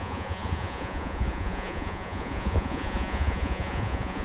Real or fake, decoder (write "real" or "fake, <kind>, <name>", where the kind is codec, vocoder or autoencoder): fake, vocoder, Vocos